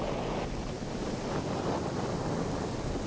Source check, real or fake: real